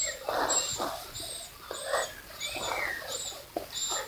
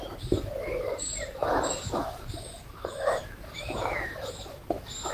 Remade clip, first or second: second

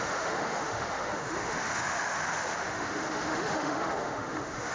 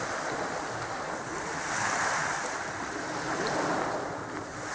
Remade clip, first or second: first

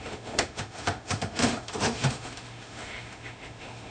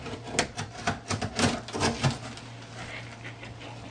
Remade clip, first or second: first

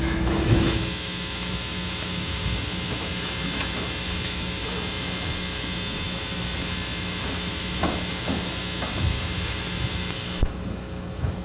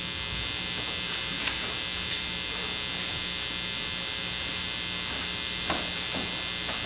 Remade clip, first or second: first